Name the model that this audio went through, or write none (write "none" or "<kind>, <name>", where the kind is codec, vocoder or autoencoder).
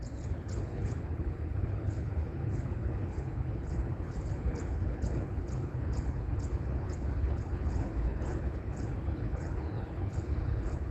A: codec, HILCodec